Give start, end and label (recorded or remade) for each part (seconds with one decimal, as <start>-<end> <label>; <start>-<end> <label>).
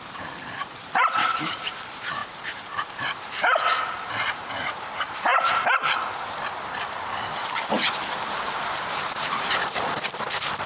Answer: 0.0-5.3 remade; 5.3-8.3 recorded; 8.3-10.7 remade